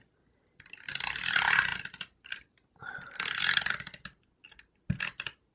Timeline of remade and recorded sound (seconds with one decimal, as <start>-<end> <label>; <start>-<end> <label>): 0.0-5.5 recorded